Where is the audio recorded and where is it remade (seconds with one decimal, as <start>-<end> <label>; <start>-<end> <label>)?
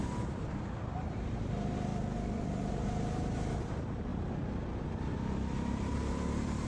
0.0-1.9 remade; 1.9-2.7 recorded; 2.7-4.1 remade; 4.1-6.7 recorded